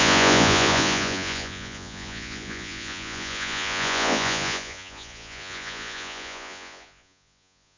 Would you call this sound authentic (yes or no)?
no